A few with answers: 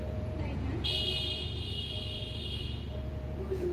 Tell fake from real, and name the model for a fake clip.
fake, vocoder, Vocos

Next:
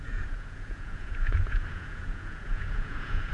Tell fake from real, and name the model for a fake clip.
fake, vocoder, Vocos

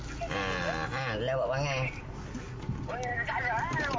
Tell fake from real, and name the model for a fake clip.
real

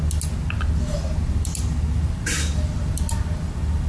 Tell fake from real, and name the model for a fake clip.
real